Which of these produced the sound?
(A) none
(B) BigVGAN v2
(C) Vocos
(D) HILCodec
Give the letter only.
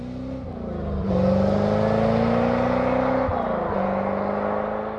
A